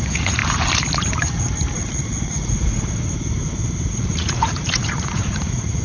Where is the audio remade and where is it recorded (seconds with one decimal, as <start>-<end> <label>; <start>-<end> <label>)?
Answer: 0.0-0.4 remade; 0.4-3.9 recorded; 3.9-5.8 remade